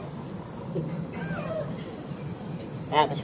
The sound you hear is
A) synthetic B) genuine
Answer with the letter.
B